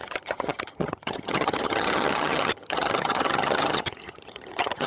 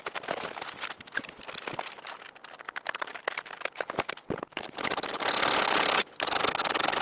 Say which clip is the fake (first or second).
first